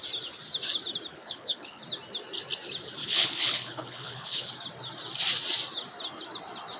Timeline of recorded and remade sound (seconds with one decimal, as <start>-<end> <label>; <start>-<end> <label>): 0.0-1.1 recorded; 1.1-1.8 remade; 1.8-3.0 recorded; 3.0-4.5 remade; 4.5-6.8 recorded